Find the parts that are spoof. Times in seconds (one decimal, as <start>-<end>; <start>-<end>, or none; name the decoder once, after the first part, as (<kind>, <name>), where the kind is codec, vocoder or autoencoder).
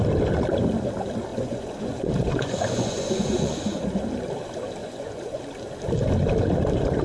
1.3-3.8 (vocoder, Vocos); 4.8-5.4